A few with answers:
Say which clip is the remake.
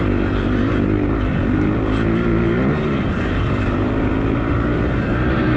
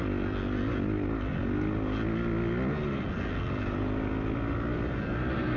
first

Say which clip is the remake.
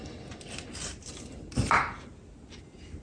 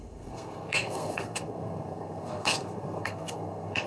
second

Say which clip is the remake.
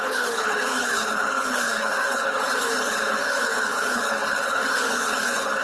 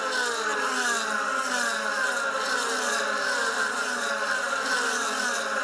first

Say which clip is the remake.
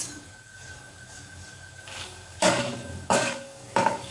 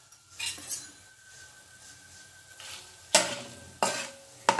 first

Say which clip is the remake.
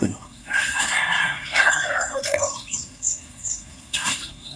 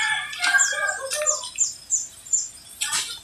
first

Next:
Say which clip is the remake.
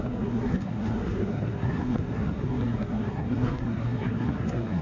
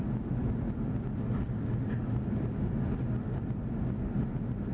first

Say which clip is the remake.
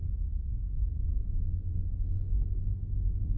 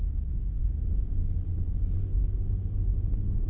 first